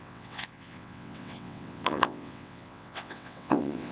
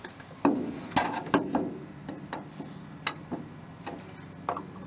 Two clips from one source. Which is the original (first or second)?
second